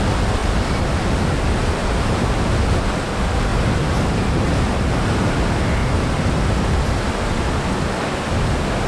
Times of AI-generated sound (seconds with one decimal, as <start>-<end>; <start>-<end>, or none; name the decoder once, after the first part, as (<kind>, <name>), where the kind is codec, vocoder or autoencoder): 0.4-1.2 (vocoder, BigVGAN v2); 1.6-2.6; 3.5-5.3; 5.8-7.1